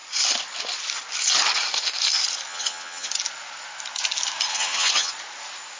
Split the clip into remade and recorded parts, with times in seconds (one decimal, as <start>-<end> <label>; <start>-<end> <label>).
0.0-2.5 recorded; 2.5-3.1 remade; 3.1-4.5 recorded; 4.5-5.1 remade; 5.1-5.8 recorded

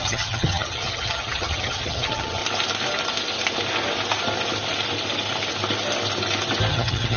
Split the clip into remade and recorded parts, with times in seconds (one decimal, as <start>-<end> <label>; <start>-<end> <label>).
0.0-2.4 remade; 2.4-6.7 recorded; 6.7-7.2 remade

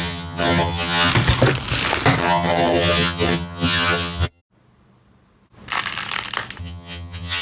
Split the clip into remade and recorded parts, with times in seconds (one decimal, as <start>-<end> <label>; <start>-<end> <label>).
0.0-1.1 remade; 1.1-2.2 recorded; 2.2-4.4 remade; 4.4-6.6 recorded; 6.6-7.4 remade